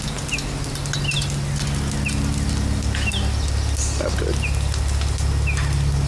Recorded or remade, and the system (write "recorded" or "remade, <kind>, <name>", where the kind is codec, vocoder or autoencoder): recorded